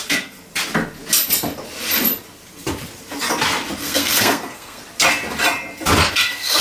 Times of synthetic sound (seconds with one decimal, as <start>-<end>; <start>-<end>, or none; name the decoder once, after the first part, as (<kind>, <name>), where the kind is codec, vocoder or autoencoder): 0.0-0.4 (codec, SNAC); 3.8-4.8; 6.1-6.6